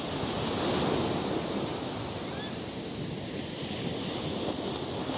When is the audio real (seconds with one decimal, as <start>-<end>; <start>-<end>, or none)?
0.0-5.2

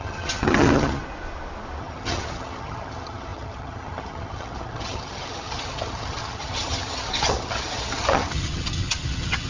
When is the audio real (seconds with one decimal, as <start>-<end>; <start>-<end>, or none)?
1.0-1.8

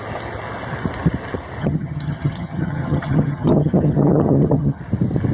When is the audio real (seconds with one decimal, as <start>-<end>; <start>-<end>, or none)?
0.0-1.6; 4.8-5.3